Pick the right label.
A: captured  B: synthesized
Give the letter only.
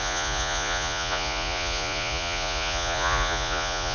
B